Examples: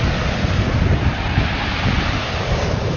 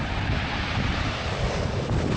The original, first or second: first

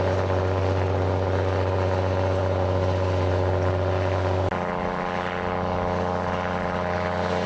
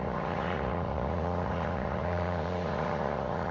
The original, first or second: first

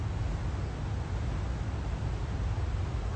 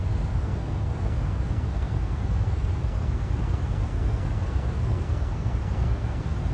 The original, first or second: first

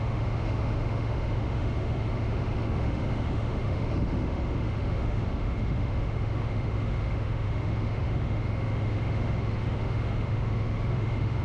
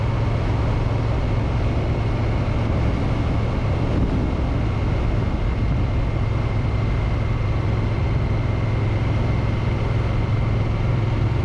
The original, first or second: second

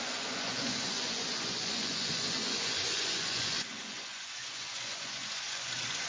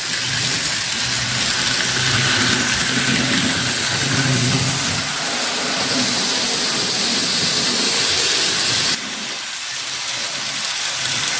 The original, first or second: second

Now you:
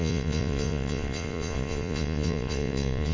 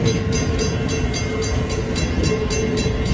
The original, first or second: second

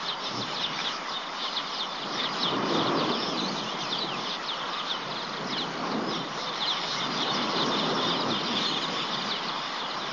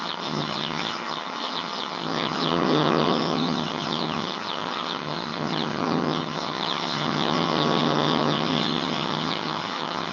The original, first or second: first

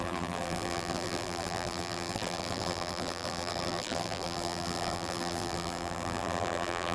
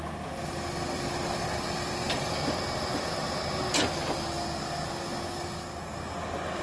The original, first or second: second